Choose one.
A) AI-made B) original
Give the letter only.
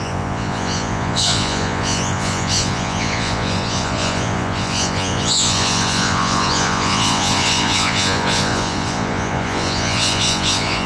A